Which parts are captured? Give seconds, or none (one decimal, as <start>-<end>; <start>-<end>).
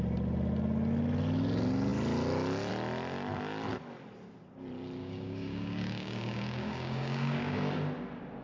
0.0-5.0; 7.7-8.4